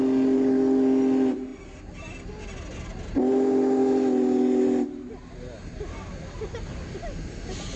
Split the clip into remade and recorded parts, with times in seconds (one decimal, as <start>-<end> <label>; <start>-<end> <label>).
0.0-7.8 recorded